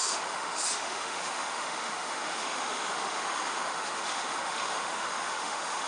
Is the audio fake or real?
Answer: fake